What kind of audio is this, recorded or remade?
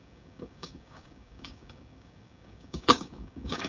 remade